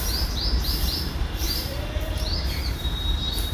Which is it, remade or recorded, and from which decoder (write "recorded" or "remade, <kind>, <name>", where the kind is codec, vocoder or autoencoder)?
remade, vocoder, BigVGAN v2